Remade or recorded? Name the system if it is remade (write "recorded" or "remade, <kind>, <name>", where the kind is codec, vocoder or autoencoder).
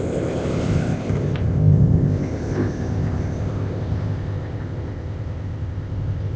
remade, codec, ZipCodec